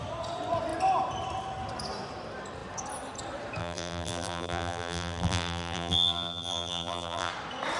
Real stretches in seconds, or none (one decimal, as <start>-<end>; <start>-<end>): 0.0-3.6; 7.3-7.8